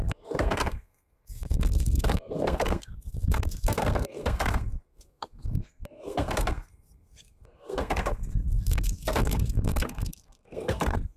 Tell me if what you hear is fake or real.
fake